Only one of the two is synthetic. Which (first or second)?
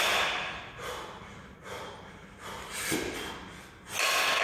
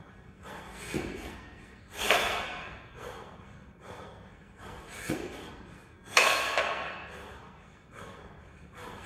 second